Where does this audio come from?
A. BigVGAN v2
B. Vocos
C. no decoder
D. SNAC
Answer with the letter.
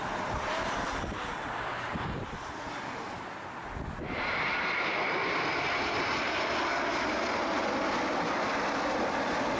C